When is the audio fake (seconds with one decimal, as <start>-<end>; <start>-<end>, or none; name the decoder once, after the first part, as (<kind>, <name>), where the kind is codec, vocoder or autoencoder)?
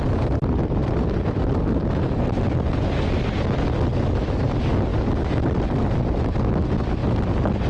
0.8-1.4 (vocoder, BigVGAN v2); 4.9-6.1